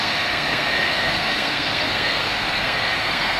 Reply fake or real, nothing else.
fake